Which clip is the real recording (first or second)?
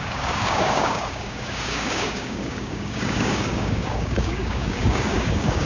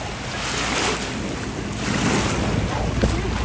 second